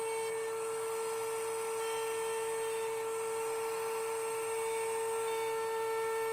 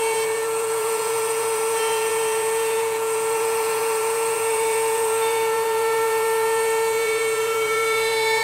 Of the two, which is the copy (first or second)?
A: second